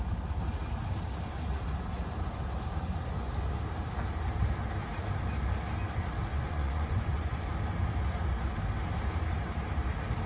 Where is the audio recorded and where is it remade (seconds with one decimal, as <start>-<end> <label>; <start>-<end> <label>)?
0.0-6.3 recorded; 6.3-7.5 remade; 7.5-10.3 recorded